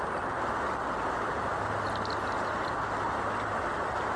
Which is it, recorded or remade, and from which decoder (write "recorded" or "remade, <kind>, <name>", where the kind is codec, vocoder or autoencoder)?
recorded